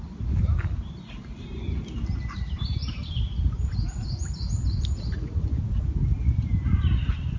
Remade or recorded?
recorded